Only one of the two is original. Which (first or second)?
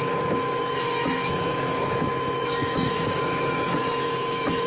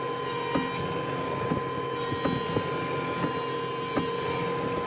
second